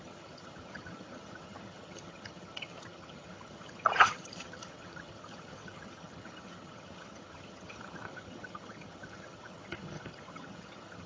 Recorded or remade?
remade